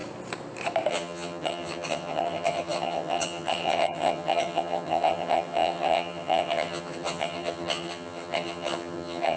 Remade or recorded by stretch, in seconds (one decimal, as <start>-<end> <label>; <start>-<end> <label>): 0.0-0.9 recorded; 0.9-9.4 remade